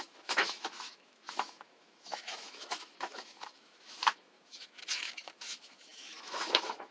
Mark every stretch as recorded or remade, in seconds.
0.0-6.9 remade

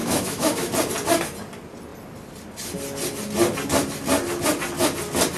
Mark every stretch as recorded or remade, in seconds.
0.0-0.7 remade; 0.7-5.4 recorded

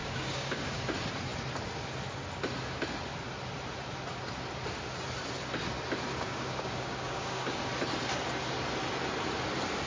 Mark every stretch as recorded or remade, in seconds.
0.0-0.8 remade; 0.8-6.1 recorded; 6.1-7.7 remade; 7.7-9.9 recorded

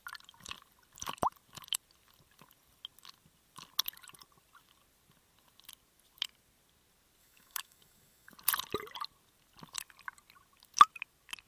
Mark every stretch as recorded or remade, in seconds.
0.0-7.2 recorded; 7.2-8.3 remade; 8.3-11.5 recorded